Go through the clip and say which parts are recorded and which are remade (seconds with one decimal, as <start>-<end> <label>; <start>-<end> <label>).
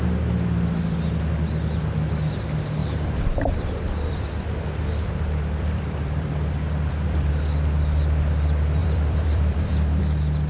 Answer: 0.0-2.8 recorded; 2.8-7.3 remade; 7.3-8.8 recorded; 8.8-10.0 remade; 10.0-10.5 recorded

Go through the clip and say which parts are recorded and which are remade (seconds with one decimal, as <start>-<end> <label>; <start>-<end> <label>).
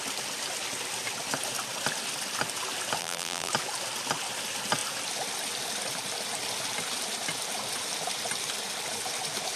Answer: 0.0-3.0 recorded; 3.0-3.5 remade; 3.5-9.6 recorded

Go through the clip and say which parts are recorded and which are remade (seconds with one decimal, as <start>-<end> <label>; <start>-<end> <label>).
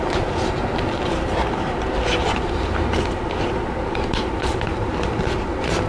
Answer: 0.0-1.7 remade; 1.7-4.2 recorded; 4.2-5.9 remade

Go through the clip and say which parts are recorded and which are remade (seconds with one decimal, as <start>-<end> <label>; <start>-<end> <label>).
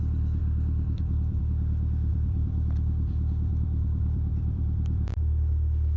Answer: 0.0-0.4 recorded; 0.4-1.4 remade; 1.4-2.1 recorded; 2.1-5.1 remade; 5.1-6.0 recorded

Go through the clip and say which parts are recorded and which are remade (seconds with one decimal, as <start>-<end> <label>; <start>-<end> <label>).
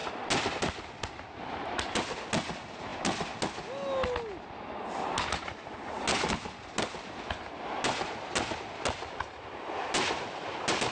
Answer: 0.0-10.9 recorded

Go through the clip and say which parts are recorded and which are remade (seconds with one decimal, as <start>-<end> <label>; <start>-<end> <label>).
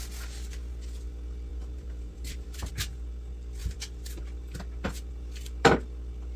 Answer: 0.0-1.5 recorded; 1.5-2.7 remade; 2.7-3.6 recorded; 3.6-4.2 remade; 4.2-6.4 recorded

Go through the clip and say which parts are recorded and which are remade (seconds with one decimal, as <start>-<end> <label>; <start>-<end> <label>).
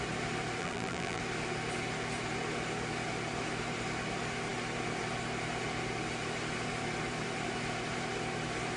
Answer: 0.0-0.6 recorded; 0.6-1.2 remade; 1.2-8.8 recorded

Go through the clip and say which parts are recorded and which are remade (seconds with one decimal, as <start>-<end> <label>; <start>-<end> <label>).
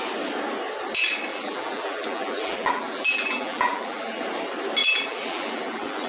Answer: 0.0-1.3 recorded; 1.3-4.2 remade; 4.2-4.8 recorded; 4.8-6.1 remade